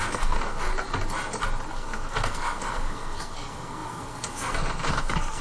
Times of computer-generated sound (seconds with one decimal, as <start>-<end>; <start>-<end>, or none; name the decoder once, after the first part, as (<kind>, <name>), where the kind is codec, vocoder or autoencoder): 0.0-0.7 (codec, SNAC); 1.7-5.4